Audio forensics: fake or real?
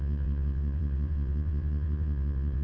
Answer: fake